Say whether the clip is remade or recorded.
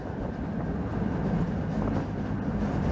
recorded